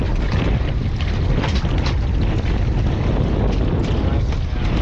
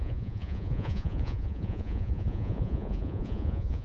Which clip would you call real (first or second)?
first